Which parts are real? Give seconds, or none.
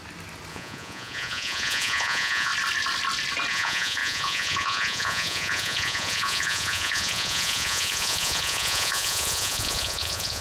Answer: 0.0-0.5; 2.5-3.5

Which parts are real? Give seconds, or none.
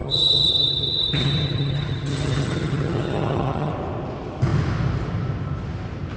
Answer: 3.7-6.2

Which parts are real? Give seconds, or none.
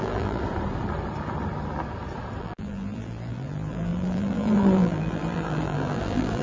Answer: 0.4-2.4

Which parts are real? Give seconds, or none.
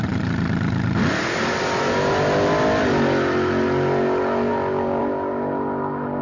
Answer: 0.0-6.2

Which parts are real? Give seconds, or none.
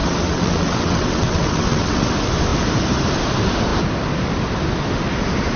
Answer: 2.1-5.6